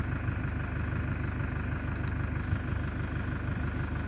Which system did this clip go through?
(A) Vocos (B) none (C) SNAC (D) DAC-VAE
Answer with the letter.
B